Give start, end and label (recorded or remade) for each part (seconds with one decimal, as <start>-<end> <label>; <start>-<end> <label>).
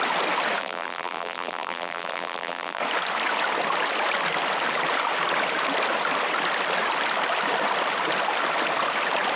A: 0.0-0.6 recorded; 0.6-2.8 remade; 2.8-9.4 recorded